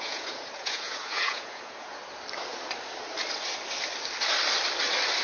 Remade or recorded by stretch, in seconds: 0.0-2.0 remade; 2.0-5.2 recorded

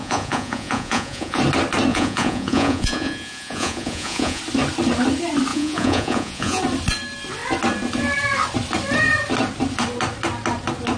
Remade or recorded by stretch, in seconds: 0.0-1.4 remade; 1.4-1.9 recorded; 1.9-4.4 remade; 4.4-5.5 recorded; 5.5-6.6 remade; 6.6-11.0 recorded